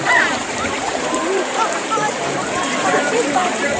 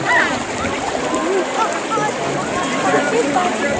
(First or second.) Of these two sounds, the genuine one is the second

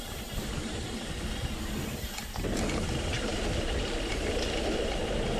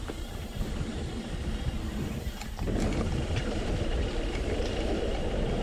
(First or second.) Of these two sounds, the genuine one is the first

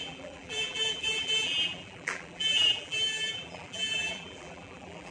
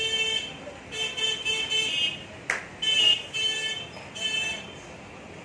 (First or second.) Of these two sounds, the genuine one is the second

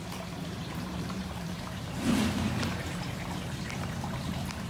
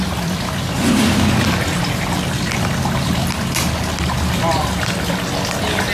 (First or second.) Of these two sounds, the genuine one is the second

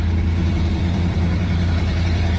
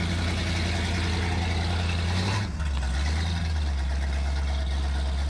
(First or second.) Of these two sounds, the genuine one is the second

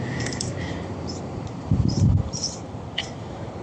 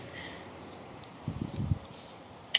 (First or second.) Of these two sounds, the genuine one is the second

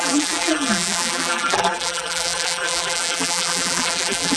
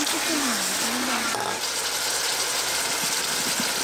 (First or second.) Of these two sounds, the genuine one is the second